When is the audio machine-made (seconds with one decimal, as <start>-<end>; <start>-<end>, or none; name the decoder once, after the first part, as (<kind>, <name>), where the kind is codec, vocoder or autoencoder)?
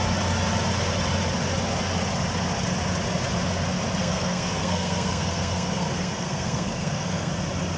4.0-7.3 (codec, SNAC)